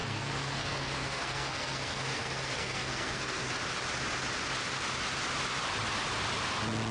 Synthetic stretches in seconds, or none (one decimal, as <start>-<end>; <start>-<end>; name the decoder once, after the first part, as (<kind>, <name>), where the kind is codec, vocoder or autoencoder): 0.0-3.5 (codec, SNAC)